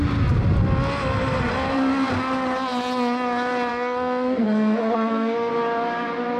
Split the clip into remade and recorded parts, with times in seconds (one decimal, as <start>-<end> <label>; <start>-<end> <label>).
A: 0.0-3.7 recorded; 3.7-5.5 remade; 5.5-6.4 recorded